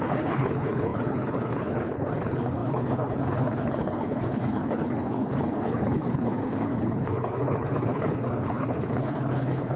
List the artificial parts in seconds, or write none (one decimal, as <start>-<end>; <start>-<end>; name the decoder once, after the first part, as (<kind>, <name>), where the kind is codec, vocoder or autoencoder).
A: 0.0-9.8 (codec, HILCodec)